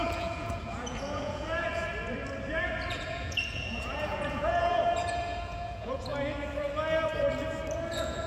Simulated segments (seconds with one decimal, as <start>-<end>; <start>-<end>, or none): 0.0-1.9; 2.9-6.1; 7.9-8.3